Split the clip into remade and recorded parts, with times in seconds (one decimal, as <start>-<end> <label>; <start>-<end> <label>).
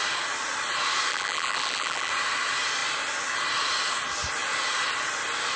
0.0-1.1 recorded; 1.1-2.1 remade; 2.1-5.6 recorded